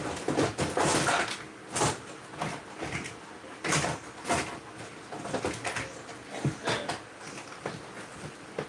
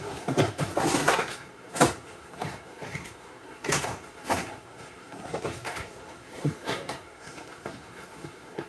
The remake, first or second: second